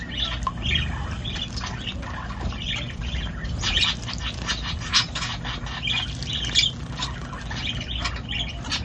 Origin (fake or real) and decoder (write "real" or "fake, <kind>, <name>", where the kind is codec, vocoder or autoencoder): real